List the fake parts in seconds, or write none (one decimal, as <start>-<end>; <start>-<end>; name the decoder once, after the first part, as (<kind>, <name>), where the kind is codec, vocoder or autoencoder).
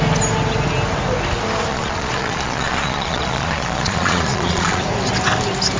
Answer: 1.7-4.8 (vocoder, Vocos)